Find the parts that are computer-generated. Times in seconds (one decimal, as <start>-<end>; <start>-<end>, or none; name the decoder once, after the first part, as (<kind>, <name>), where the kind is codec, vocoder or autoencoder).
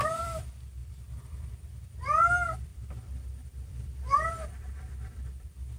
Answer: 0.0-5.8 (vocoder, BigVGAN v2)